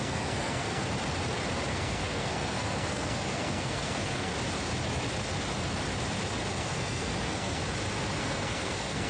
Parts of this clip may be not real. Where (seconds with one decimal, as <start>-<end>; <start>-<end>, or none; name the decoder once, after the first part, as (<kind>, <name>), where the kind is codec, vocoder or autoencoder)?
0.0-0.8 (codec, SNAC); 1.7-4.3; 6.5-7.6; 8.2-9.1

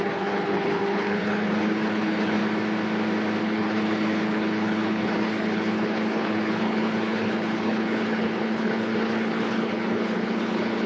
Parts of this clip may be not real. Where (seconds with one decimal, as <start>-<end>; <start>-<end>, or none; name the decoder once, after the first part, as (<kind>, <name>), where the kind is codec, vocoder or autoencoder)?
0.0-2.4 (codec, HILCodec); 3.4-10.9

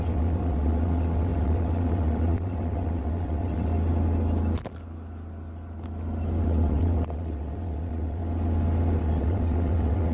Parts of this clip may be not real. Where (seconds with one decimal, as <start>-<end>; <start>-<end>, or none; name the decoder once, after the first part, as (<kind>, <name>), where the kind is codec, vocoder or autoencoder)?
0.0-3.7 (vocoder, WaveNeXt); 6.4-8.2; 9.0-10.1

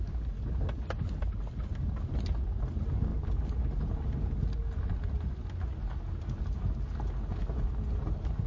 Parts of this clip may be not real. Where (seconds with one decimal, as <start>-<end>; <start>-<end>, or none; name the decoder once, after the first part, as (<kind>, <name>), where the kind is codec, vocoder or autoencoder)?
none

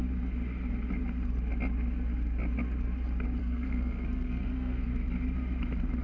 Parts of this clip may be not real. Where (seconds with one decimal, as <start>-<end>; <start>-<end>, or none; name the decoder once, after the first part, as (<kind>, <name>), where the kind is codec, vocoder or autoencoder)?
3.4-4.9 (codec, SNAC)

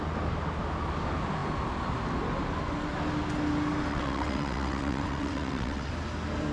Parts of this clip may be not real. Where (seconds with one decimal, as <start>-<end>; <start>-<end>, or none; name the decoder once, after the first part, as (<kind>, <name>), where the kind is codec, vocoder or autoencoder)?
3.9-5.9 (vocoder, WaveNeXt)